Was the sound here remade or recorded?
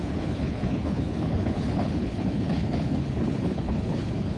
remade